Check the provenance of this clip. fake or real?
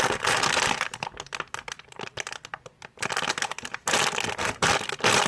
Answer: real